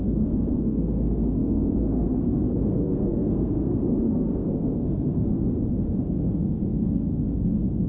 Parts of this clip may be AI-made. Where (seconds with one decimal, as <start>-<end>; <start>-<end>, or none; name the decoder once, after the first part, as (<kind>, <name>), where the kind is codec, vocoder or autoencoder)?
0.0-7.9 (codec, SNAC)